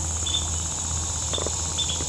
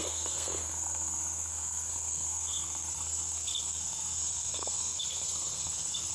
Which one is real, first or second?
first